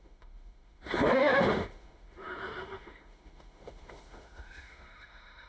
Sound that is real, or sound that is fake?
fake